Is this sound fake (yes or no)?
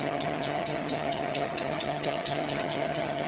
yes